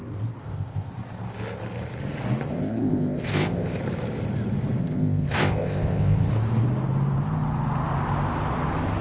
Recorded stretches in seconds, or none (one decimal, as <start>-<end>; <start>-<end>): 0.0-0.4; 0.9-2.5; 3.8-4.8; 6.3-9.0